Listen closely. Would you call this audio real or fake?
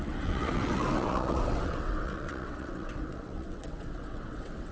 fake